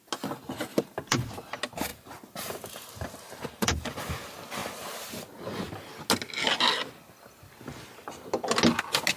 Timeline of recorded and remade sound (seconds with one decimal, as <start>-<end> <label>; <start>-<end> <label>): 0.0-0.7 recorded; 0.7-1.3 remade; 1.3-1.9 recorded; 1.9-4.1 remade; 4.1-9.2 recorded